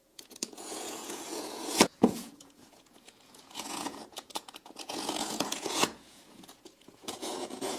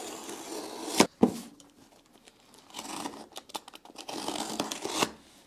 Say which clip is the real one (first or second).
second